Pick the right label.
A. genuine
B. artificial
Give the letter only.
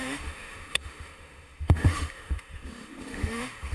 B